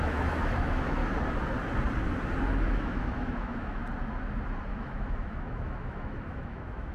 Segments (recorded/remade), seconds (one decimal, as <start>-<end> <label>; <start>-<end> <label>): 0.0-1.0 remade; 1.0-2.5 recorded; 2.5-3.8 remade; 3.8-4.7 recorded; 4.7-6.9 remade